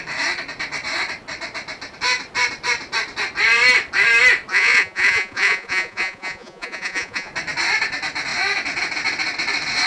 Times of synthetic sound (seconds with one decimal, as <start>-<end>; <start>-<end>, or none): 4.5-7.3